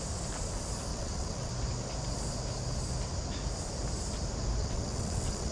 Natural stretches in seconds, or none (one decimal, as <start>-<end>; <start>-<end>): 0.0-0.9; 1.5-4.6